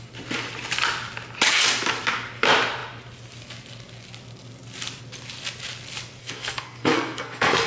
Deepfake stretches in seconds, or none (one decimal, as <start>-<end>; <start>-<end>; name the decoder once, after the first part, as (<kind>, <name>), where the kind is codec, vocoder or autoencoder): 6.2-7.7 (codec, SNAC)